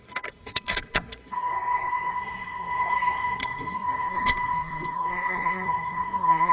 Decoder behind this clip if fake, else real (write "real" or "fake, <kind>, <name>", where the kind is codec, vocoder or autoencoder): fake, codec, SNAC